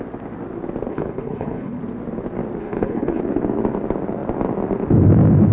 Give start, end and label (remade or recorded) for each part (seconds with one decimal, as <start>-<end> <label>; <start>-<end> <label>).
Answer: 0.0-0.9 recorded; 0.9-1.8 remade; 1.8-2.6 recorded; 2.6-3.2 remade; 3.2-5.5 recorded